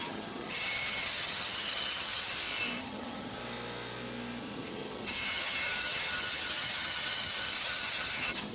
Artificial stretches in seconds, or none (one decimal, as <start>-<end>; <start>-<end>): 0.0-2.3; 2.8-3.4; 4.4-8.5